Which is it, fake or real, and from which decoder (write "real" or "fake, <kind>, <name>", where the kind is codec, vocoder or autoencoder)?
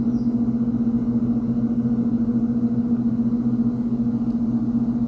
real